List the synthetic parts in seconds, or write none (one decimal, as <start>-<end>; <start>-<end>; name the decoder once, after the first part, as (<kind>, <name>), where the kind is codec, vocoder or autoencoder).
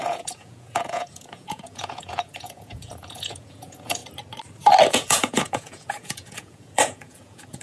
0.0-4.0 (vocoder, Vocos); 4.9-7.6